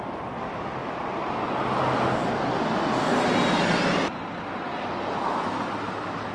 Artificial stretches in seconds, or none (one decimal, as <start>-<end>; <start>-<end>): none

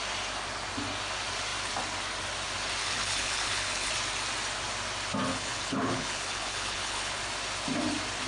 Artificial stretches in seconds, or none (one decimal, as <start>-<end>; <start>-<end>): 2.8-3.9; 5.3-7.2

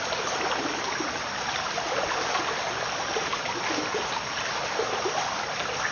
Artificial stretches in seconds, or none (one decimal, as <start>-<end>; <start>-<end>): none

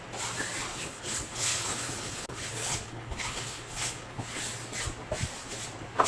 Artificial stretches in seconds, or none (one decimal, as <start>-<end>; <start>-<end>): 0.7-4.4

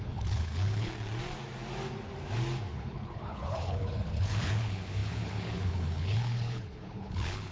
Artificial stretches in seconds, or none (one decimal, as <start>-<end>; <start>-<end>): 0.0-0.9; 2.7-7.5